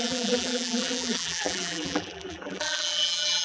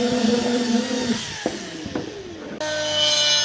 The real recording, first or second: second